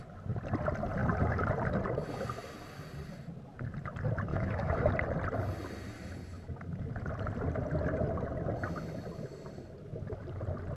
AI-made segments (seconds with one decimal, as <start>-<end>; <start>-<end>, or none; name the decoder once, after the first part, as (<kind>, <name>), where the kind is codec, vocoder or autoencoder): 4.3-4.9 (autoencoder, DAC-VAE)